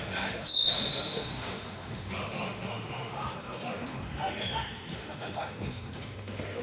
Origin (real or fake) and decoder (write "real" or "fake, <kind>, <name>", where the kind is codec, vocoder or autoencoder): fake, autoencoder, DAC-VAE